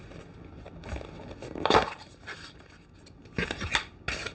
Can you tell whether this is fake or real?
real